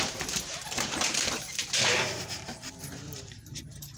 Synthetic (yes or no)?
yes